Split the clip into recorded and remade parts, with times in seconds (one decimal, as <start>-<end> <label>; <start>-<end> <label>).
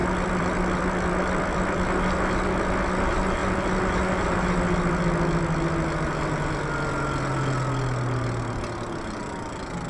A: 0.0-2.0 remade; 2.0-9.9 recorded